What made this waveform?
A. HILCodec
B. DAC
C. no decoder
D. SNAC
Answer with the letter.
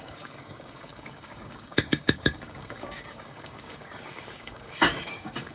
B